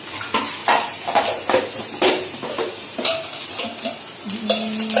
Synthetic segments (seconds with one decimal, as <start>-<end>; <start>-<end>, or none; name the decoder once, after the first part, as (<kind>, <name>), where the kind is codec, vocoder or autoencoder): none

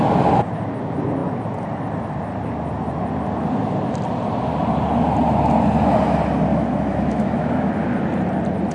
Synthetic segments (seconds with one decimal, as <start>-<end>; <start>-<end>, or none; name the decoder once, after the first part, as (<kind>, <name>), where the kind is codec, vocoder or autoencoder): 6.5-7.7 (autoencoder, DAC-VAE)

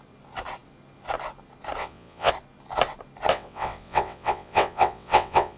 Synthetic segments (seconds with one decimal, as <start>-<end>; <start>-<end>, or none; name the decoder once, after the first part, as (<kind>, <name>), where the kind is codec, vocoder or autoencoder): 1.8-2.3 (vocoder, WaveNeXt); 3.3-5.6

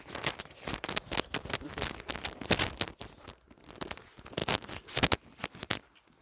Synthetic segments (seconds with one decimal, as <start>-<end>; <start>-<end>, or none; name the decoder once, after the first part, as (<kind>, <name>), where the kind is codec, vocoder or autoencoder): none